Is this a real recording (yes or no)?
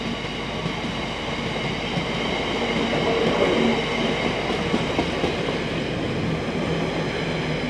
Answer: yes